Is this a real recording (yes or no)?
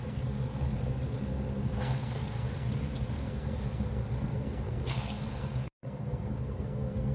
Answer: no